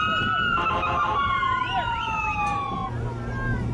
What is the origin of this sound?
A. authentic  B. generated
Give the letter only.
A